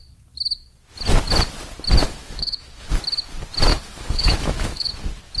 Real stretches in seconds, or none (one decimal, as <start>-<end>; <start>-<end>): 0.0-2.0; 2.9-3.7; 4.9-5.4